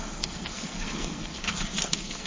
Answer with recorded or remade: remade